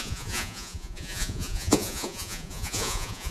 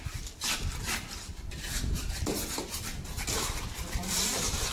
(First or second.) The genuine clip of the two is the second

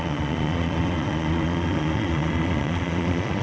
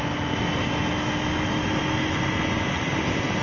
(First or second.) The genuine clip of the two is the second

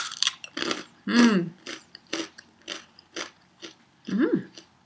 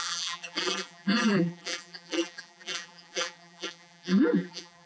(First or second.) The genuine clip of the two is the first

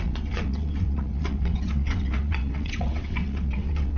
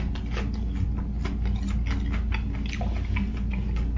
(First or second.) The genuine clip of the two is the second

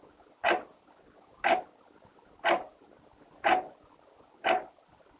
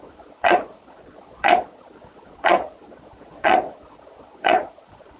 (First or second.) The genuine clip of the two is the first